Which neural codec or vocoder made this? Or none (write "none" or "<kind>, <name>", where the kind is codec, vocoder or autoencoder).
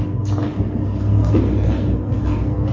codec, SNAC